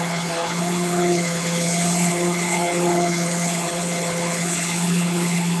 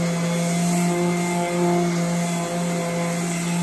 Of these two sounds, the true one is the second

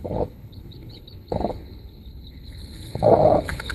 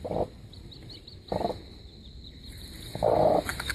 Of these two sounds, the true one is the second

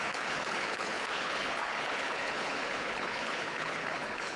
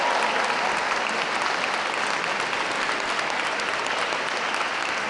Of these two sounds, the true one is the second